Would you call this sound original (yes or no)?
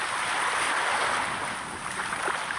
yes